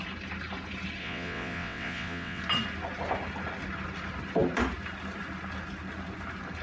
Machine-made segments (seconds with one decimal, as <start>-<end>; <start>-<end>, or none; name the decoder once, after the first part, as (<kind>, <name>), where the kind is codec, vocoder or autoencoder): 1.0-2.4 (vocoder, WaveNeXt)